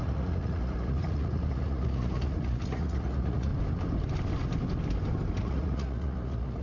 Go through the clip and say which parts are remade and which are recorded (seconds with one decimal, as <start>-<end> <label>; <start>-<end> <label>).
0.0-3.5 remade; 3.5-5.4 recorded; 5.4-6.6 remade